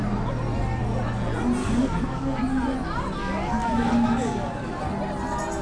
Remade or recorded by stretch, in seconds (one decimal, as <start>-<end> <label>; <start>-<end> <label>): 0.0-1.6 recorded; 1.6-2.4 remade; 2.4-3.2 recorded; 3.2-4.8 remade; 4.8-5.6 recorded